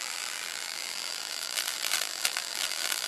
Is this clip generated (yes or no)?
yes